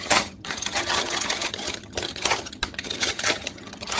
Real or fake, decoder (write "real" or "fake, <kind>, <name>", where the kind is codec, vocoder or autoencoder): fake, vocoder, HiFi-GAN